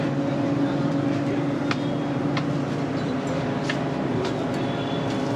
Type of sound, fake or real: real